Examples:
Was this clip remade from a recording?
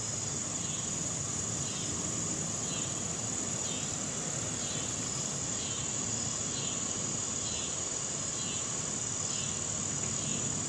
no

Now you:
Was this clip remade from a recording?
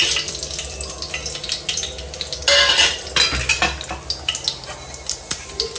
no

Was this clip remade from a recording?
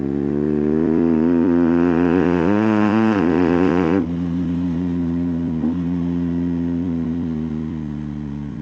yes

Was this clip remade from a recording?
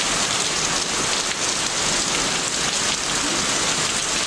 no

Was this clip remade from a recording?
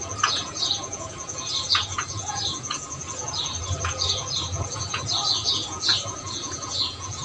yes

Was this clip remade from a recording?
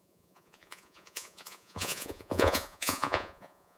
yes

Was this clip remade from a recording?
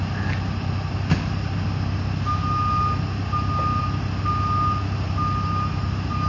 no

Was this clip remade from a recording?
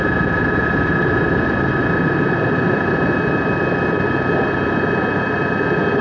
no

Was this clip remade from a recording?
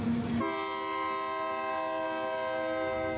no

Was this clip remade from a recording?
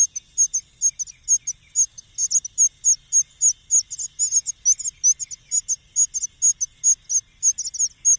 no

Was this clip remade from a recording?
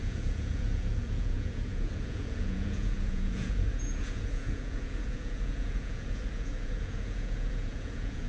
yes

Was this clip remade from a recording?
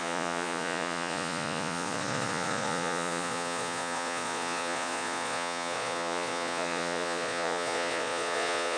yes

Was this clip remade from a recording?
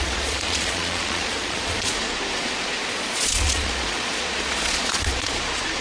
yes